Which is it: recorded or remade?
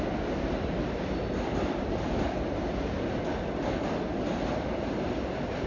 recorded